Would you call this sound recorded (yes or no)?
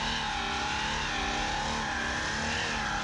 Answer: yes